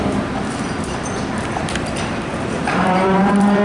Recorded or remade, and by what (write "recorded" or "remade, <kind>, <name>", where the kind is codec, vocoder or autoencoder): remade, vocoder, BigVGAN v2